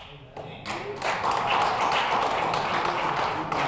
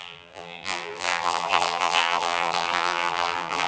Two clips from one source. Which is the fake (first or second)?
second